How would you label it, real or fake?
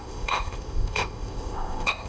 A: fake